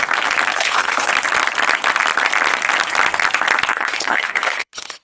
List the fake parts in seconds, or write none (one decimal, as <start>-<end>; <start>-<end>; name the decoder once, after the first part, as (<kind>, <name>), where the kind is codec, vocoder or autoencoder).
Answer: 0.5-1.1 (codec, HILCodec); 3.7-5.0